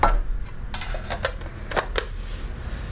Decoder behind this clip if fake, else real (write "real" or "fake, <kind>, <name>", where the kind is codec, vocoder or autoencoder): real